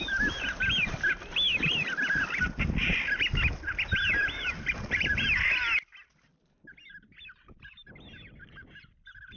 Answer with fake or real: real